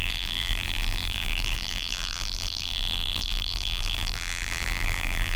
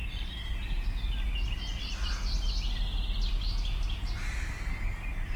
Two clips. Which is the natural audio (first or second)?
second